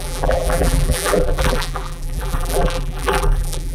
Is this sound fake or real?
fake